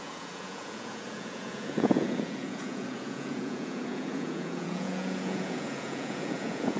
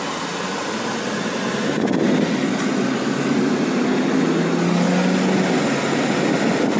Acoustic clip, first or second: second